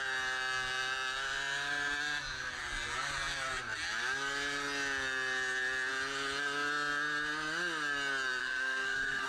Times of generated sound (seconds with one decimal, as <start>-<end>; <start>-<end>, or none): 8.4-9.3